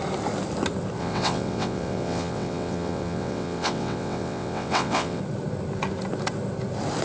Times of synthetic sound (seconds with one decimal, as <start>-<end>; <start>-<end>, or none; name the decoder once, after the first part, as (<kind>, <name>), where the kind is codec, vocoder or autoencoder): 1.0-5.2 (vocoder, WaveNeXt)